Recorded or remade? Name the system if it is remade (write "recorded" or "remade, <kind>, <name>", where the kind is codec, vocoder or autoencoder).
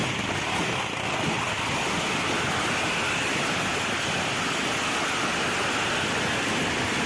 recorded